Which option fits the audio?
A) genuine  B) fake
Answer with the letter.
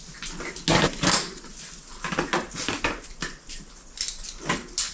A